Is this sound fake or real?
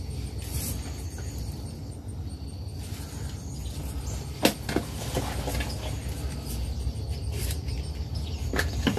real